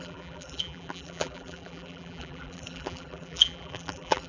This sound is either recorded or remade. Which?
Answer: remade